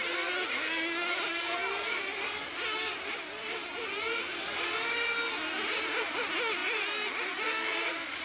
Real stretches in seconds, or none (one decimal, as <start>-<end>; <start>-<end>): 0.0-8.2